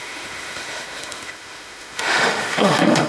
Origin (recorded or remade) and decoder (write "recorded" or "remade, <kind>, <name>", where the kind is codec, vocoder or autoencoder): remade, autoencoder, DAC-VAE